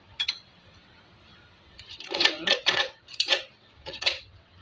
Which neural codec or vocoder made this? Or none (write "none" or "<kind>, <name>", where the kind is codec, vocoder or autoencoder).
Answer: vocoder, WaveNeXt